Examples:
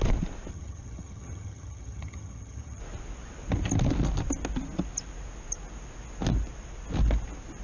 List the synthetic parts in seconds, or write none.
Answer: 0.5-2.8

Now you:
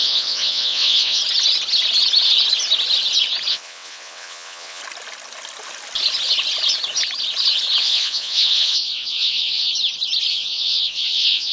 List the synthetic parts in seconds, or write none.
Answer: 0.0-1.2; 3.5-4.8; 7.8-9.7; 10.3-11.5

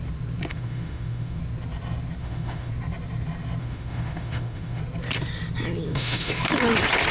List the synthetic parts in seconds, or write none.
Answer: 0.5-1.4; 2.2-2.7; 3.6-4.8; 5.9-6.4

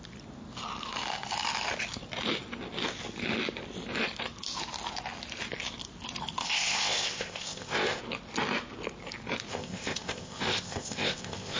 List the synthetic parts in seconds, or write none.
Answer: 6.4-8.0; 9.5-11.6

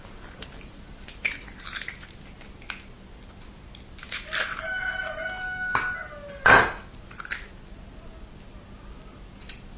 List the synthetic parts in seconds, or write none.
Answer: none

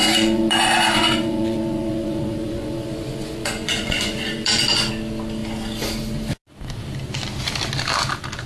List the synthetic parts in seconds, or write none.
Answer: 0.0-4.9

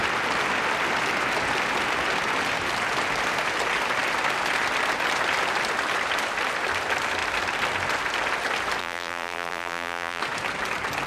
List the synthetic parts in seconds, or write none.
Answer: 8.8-10.2

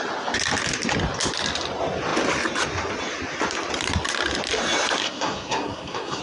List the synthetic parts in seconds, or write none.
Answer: 5.0-6.2